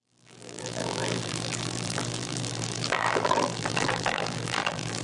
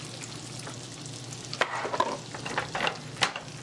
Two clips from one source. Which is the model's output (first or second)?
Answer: first